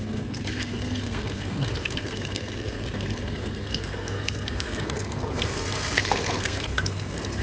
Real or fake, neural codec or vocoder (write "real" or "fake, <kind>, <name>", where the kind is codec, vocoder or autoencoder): fake, codec, SNAC